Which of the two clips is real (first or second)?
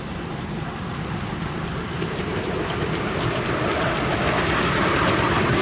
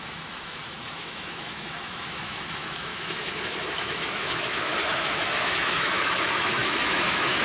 first